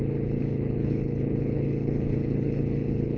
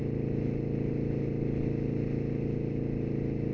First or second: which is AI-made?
first